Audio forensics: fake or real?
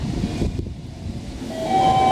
real